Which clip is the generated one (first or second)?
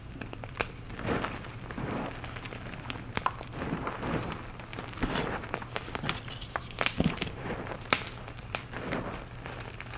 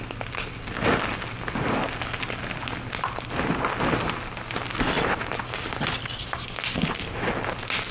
first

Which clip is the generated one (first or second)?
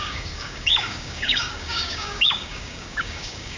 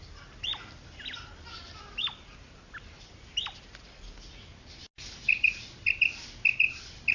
first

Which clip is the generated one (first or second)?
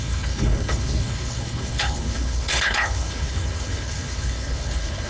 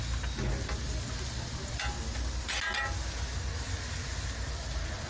first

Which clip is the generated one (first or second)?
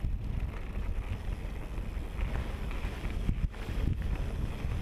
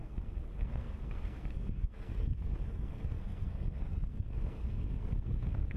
second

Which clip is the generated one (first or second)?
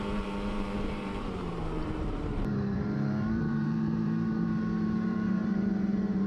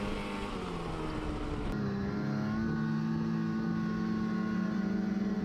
first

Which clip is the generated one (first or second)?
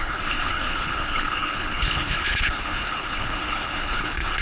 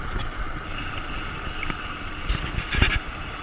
first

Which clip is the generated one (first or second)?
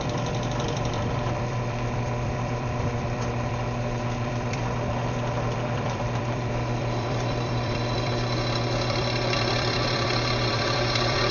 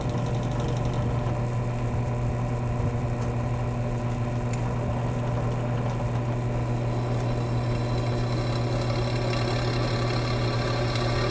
first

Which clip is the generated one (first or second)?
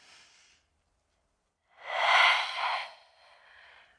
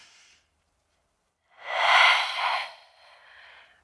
second